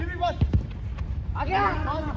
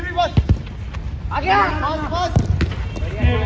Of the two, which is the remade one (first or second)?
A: first